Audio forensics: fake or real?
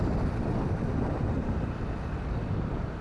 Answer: real